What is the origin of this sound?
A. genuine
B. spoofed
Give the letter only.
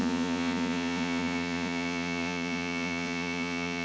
B